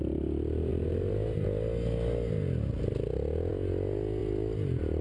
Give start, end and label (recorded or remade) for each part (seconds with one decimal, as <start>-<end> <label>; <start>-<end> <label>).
0.0-4.2 recorded; 4.2-5.0 remade